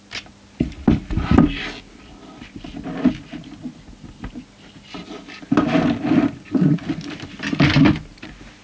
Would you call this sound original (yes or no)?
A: yes